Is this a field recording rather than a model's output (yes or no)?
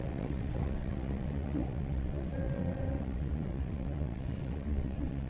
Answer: no